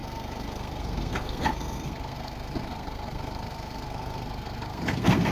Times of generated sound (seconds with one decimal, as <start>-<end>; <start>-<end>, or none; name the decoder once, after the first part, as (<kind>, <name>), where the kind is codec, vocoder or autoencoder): 0.0-5.3 (codec, SNAC)

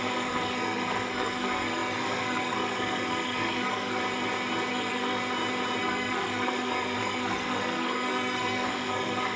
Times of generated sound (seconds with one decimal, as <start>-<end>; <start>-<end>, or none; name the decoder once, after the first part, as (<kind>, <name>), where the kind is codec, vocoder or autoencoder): 0.0-4.0 (codec, SNAC); 4.7-5.2; 5.8-9.4

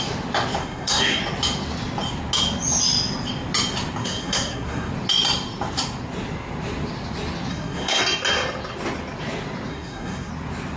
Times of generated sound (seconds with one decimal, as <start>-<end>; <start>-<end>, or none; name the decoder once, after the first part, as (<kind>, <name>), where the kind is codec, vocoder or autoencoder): 0.6-1.2 (codec, SNAC); 4.0-4.9; 7.5-8.0; 9.7-10.3

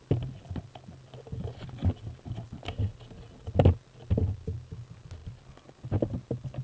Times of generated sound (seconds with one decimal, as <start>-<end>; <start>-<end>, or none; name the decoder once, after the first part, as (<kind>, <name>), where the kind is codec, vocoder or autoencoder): none

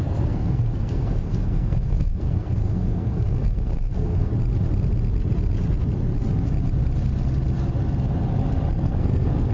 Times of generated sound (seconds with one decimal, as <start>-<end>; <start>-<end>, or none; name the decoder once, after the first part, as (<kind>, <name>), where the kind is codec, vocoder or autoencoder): 0.0-4.3 (codec, SNAC); 8.7-9.5

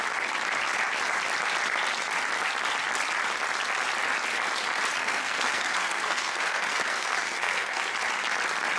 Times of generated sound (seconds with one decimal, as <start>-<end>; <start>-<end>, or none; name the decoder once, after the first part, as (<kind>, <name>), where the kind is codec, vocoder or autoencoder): 5.0-7.8 (codec, SNAC)

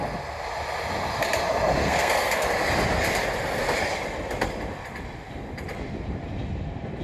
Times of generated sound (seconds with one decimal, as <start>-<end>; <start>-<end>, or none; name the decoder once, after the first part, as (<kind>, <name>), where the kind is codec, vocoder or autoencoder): 1.8-2.3 (codec, SNAC)